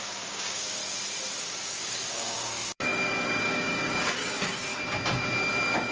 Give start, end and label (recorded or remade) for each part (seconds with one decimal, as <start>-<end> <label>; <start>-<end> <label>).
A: 0.0-0.8 remade; 0.8-1.4 recorded; 1.4-4.7 remade; 4.7-5.4 recorded; 5.4-5.9 remade